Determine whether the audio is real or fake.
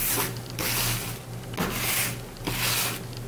real